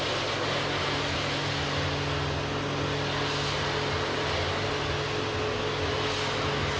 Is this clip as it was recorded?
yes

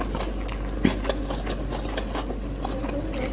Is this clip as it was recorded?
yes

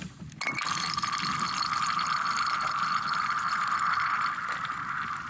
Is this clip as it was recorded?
yes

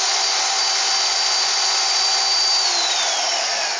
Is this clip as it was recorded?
yes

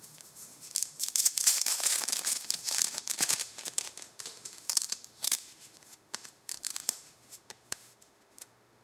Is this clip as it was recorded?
no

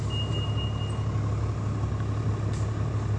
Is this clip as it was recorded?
yes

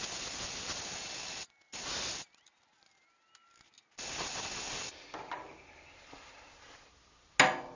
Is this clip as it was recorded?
yes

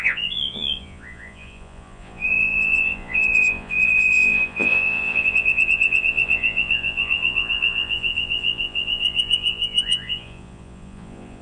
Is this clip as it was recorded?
no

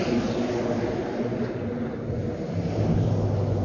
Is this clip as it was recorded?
yes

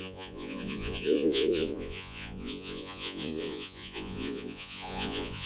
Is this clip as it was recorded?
no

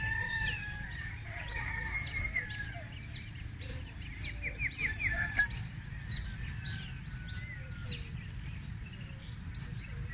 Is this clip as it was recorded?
yes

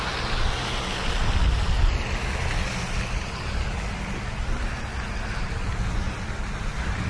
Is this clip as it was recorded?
yes